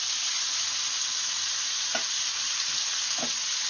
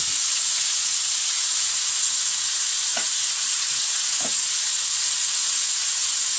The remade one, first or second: second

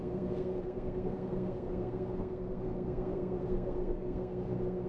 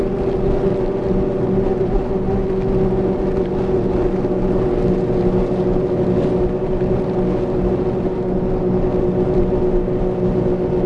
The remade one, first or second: first